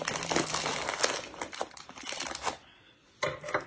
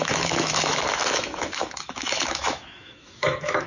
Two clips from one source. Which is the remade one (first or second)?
second